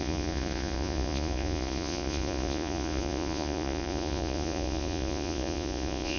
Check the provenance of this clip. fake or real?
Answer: fake